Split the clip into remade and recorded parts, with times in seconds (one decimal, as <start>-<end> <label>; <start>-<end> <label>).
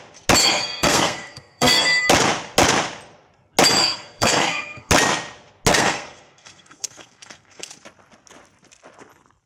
0.0-0.4 recorded; 0.4-2.0 remade; 2.0-3.8 recorded; 3.8-4.9 remade; 4.9-5.7 recorded; 5.7-7.7 remade; 7.7-9.5 recorded